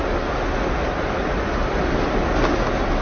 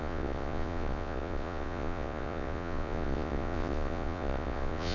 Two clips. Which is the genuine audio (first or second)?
first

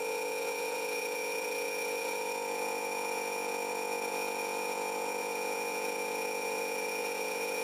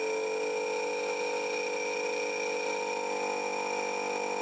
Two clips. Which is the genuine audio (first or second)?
second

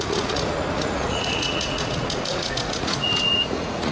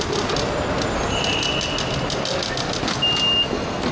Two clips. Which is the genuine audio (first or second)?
second